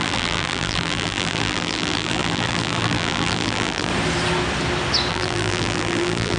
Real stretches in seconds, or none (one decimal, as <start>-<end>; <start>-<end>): 3.9-5.1